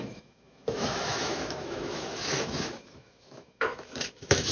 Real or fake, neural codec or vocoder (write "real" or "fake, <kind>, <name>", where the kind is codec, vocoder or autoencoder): fake, autoencoder, DAC-VAE